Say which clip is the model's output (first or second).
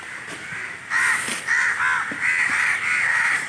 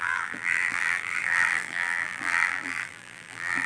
second